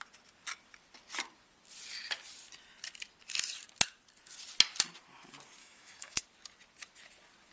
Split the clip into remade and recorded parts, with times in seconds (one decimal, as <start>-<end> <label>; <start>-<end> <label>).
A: 0.0-5.6 recorded; 5.6-6.2 remade; 6.2-7.5 recorded

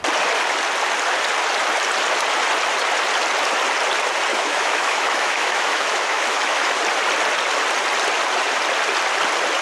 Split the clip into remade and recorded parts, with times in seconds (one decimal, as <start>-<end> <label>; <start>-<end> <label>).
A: 0.0-4.3 recorded; 4.3-6.8 remade; 6.8-9.6 recorded